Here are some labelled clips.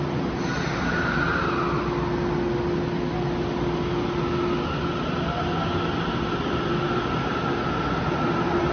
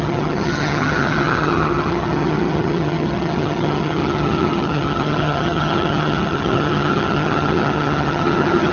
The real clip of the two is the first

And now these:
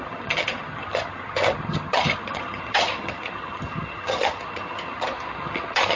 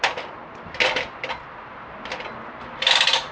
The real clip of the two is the second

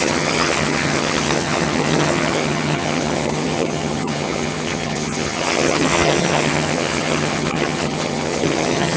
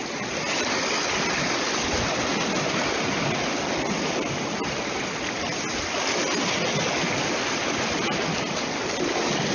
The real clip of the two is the second